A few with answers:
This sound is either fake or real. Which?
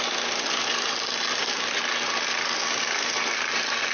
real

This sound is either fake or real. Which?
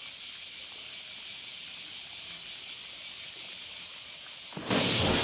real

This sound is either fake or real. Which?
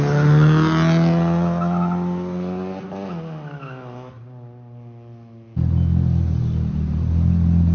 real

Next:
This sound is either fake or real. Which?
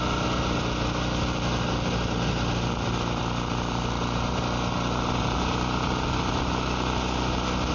real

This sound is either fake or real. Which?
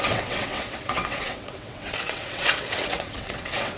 fake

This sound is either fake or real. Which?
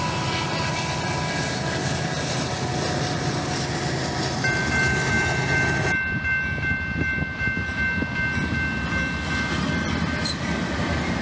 real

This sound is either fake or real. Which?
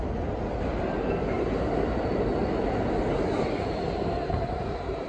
real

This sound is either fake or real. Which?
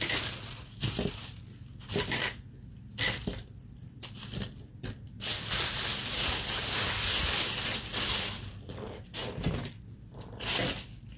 real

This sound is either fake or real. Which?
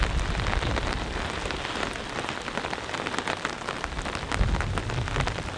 real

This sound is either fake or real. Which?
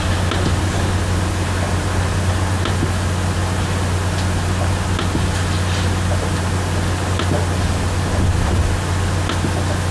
real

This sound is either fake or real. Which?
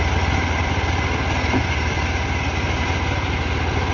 real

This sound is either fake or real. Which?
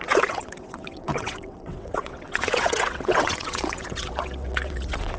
fake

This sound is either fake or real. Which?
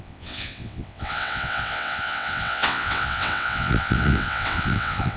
fake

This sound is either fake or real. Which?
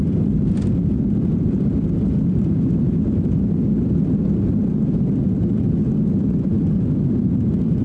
real